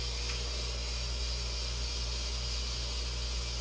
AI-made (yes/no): no